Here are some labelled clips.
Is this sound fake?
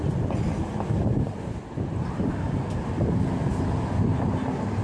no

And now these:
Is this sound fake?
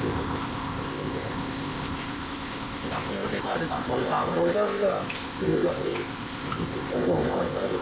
yes